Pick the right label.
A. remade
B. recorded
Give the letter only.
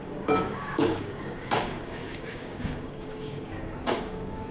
A